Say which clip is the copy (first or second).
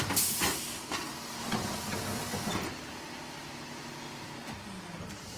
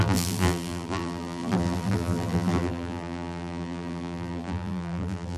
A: second